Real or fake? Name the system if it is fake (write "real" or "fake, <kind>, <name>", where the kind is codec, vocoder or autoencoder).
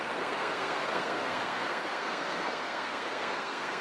fake, codec, SNAC